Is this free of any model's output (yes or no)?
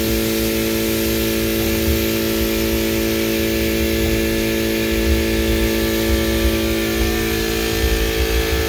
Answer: yes